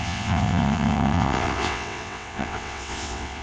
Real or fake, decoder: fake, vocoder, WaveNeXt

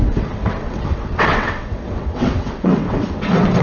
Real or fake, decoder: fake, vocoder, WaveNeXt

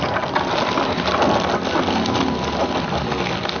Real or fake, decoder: real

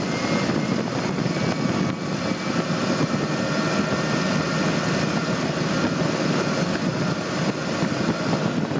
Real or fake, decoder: real